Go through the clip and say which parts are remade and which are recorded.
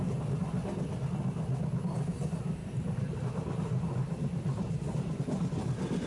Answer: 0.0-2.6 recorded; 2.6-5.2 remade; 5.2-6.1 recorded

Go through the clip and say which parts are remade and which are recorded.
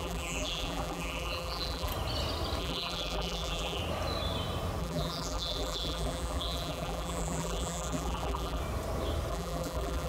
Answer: 0.0-1.9 remade; 1.9-2.6 recorded; 2.6-3.8 remade; 3.8-4.8 recorded; 4.8-8.6 remade; 8.6-9.3 recorded; 9.3-10.1 remade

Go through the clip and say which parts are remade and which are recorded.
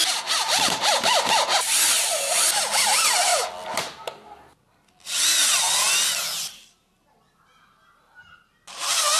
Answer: 0.0-0.5 recorded; 0.5-1.2 remade; 1.2-9.2 recorded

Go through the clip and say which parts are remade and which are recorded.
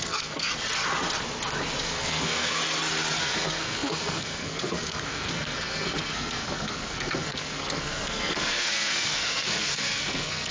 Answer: 0.0-0.5 remade; 0.5-1.8 recorded; 1.8-2.6 remade; 2.6-3.2 recorded; 3.2-10.5 remade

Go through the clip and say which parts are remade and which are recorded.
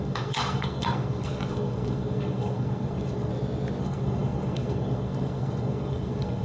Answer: 0.0-3.3 remade; 3.3-3.8 recorded; 3.8-6.4 remade